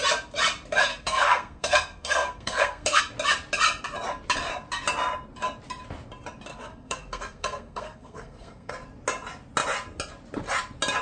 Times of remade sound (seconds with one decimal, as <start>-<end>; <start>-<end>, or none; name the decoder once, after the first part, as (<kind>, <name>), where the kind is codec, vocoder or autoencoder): 0.9-3.0 (codec, SNAC); 6.5-8.7